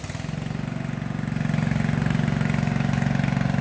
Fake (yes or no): no